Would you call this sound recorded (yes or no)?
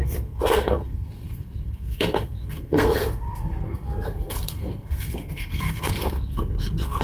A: no